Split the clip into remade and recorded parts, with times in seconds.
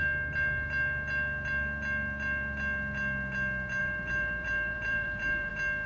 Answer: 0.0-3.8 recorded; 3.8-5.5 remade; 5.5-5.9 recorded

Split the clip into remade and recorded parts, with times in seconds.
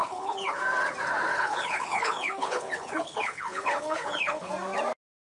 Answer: 0.0-0.6 remade; 0.6-1.3 recorded; 1.3-4.5 remade; 4.5-5.3 recorded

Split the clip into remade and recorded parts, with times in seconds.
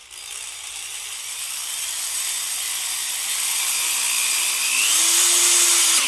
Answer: 0.0-3.3 remade; 3.3-6.1 recorded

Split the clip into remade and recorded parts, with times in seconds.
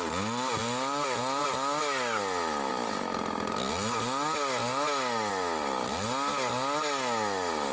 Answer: 0.0-7.7 recorded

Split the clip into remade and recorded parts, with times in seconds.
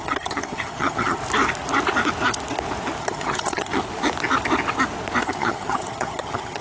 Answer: 0.0-1.2 remade; 1.2-3.0 recorded; 3.0-3.8 remade; 3.8-5.2 recorded; 5.2-6.6 remade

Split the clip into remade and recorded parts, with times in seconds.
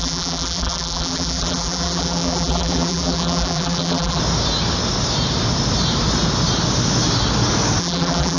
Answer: 0.0-4.2 remade; 4.2-7.8 recorded; 7.8-8.4 remade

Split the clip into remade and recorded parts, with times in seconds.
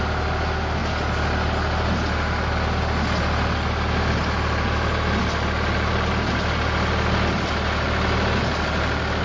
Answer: 0.0-9.2 recorded